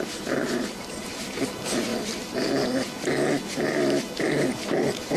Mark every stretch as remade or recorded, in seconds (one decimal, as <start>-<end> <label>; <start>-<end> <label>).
0.0-0.4 recorded; 0.4-1.0 remade; 1.0-5.2 recorded